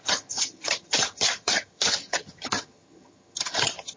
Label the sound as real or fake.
fake